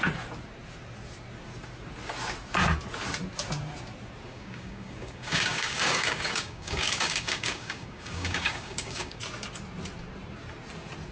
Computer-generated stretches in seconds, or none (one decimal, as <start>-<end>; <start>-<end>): 4.3-9.2